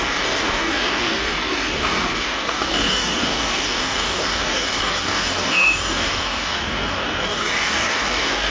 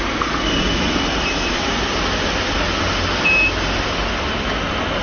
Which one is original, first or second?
second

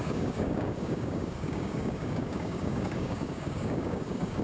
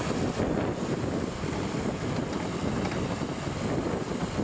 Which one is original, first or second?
second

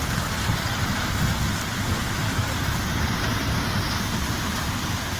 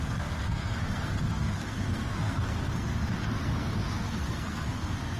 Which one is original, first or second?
first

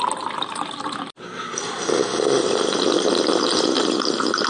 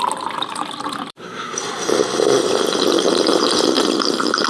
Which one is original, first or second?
first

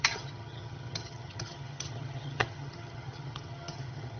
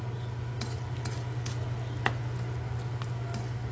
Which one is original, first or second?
second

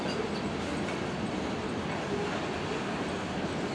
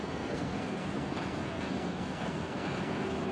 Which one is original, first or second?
first